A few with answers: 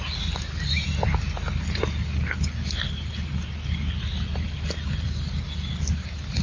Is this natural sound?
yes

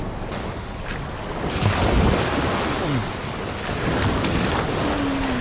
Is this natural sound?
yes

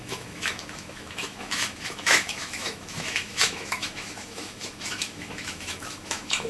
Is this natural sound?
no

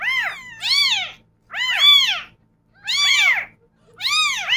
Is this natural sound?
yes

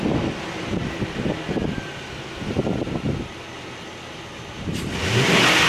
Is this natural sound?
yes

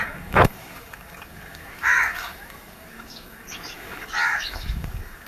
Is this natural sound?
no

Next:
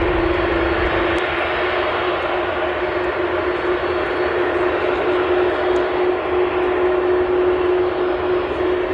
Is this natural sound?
yes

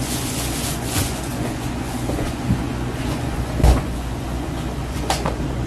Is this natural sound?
no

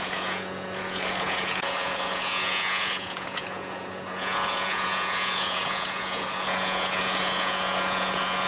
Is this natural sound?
no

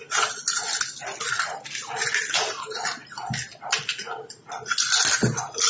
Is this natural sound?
yes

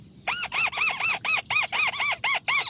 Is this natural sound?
yes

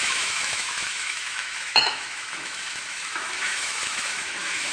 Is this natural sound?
no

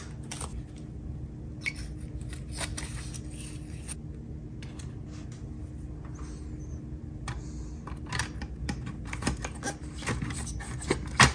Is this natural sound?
yes